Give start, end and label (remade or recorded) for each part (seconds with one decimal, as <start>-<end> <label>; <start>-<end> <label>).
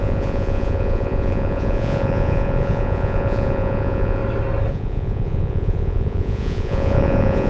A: 0.0-4.2 remade; 4.2-4.7 recorded; 4.7-7.5 remade